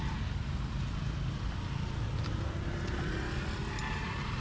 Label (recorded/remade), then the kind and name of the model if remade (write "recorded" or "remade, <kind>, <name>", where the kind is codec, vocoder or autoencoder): recorded